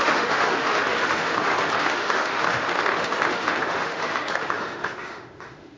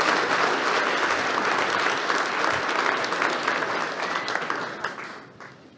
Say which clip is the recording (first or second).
second